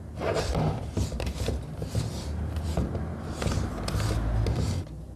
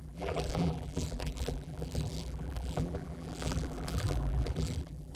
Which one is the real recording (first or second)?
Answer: first